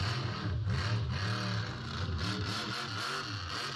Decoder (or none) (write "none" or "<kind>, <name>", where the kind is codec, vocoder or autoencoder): none